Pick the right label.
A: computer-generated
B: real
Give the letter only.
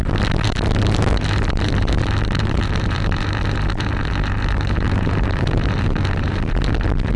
A